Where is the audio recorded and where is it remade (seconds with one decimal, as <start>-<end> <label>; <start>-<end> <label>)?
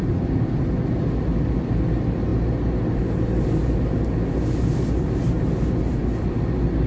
0.0-6.9 recorded